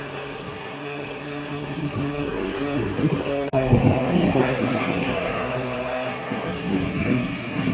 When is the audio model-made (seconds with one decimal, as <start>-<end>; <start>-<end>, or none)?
0.0-7.7